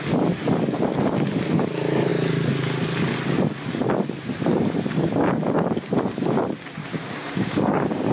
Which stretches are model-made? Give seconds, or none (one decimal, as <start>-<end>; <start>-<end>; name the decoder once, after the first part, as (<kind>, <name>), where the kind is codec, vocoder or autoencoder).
6.8-8.1 (codec, DAC)